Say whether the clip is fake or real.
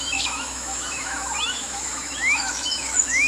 fake